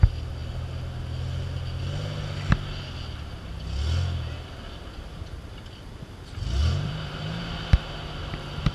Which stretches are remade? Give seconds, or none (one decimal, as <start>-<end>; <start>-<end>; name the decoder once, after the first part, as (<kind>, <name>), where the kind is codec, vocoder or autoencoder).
6.6-7.4 (vocoder, BigVGAN v2)